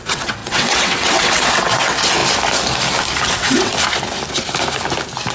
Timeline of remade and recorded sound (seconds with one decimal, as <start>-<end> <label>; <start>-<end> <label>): 0.0-2.2 remade; 2.2-3.3 recorded; 3.3-3.7 remade; 3.7-5.3 recorded